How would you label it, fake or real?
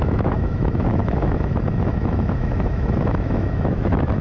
fake